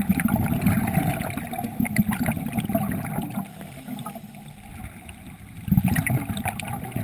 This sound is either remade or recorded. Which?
recorded